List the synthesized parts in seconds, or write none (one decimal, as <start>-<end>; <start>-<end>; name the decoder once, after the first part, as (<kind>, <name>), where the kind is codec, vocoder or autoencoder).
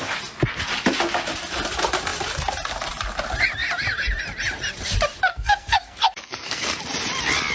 5.3-6.8 (codec, SNAC)